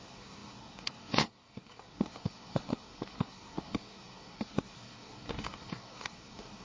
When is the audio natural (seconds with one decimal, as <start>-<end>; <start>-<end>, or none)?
none